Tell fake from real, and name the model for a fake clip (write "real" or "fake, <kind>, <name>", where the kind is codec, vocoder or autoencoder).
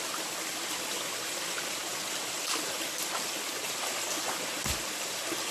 real